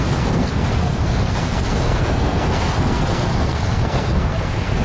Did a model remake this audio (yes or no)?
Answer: yes